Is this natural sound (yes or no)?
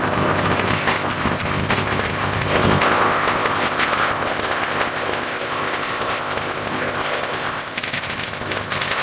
no